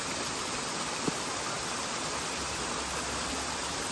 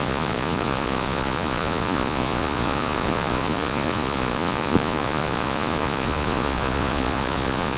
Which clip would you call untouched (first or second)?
first